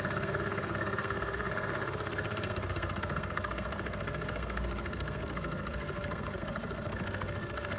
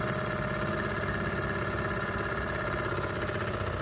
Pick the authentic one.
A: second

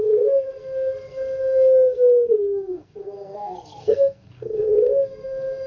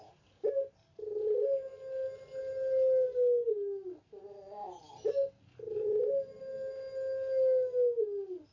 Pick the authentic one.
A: second